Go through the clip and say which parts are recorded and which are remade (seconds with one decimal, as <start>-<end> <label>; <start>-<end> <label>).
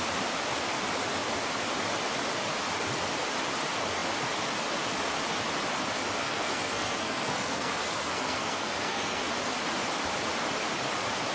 0.0-6.2 recorded; 6.2-9.2 remade; 9.2-11.3 recorded